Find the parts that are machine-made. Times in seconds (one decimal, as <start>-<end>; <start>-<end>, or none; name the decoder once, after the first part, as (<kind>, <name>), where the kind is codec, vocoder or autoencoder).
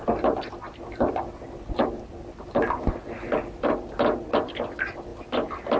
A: none